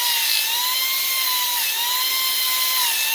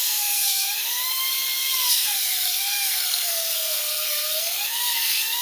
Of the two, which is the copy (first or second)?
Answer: second